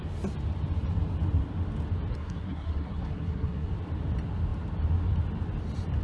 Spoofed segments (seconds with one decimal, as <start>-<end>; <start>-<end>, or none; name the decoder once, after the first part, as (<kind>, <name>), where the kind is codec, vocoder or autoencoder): 2.1-3.7 (codec, SNAC)